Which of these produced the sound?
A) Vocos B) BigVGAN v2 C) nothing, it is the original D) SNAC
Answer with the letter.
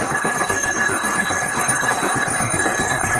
D